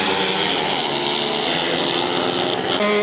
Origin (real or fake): real